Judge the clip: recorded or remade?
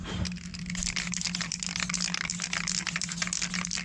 recorded